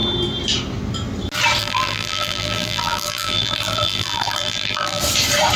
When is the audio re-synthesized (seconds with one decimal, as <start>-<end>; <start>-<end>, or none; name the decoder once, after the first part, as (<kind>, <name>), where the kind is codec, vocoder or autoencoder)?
1.6-5.0 (vocoder, BigVGAN v2)